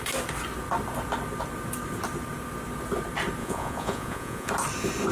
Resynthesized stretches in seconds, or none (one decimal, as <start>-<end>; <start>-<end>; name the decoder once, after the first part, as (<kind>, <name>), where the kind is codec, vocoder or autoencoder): 3.4-4.5 (vocoder, Vocos)